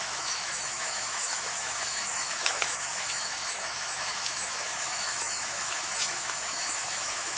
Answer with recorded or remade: remade